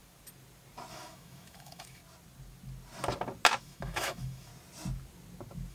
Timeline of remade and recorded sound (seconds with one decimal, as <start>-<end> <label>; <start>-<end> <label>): 0.0-0.9 recorded; 0.9-2.0 remade; 2.0-3.6 recorded; 3.6-4.5 remade; 4.5-5.7 recorded